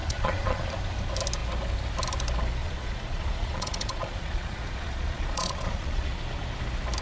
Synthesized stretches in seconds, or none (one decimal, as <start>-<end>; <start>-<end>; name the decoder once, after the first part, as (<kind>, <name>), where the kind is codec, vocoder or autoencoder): 0.0-0.7 (vocoder, Vocos); 2.6-6.1